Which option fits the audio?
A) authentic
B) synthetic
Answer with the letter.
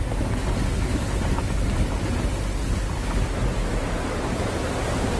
A